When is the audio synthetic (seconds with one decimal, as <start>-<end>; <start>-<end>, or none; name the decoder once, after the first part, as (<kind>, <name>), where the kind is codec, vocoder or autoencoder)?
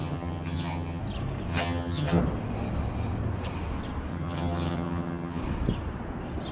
0.0-1.0 (vocoder, HiFi-GAN); 1.5-2.2; 4.1-5.4